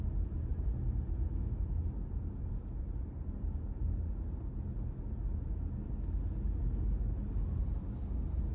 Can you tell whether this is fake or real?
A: real